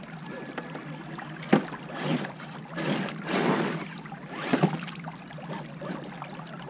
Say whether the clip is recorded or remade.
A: recorded